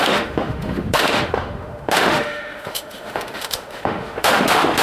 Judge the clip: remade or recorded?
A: remade